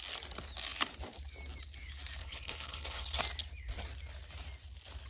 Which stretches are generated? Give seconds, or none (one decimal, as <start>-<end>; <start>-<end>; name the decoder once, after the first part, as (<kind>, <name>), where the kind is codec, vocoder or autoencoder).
2.2-3.2 (codec, HILCodec)